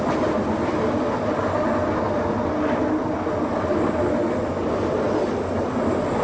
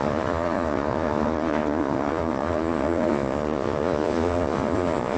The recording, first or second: first